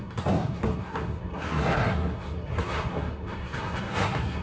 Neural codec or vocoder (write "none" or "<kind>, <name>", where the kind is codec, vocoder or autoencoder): codec, SNAC